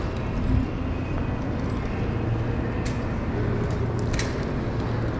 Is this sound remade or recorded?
recorded